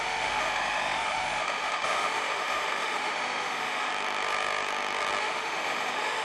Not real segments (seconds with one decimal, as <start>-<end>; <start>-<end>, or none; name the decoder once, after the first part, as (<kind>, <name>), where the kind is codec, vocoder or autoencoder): 0.0-3.9 (autoencoder, DAC-VAE); 5.2-6.2